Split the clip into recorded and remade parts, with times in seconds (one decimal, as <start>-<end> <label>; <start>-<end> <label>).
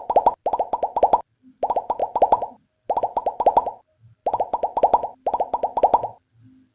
0.0-6.7 recorded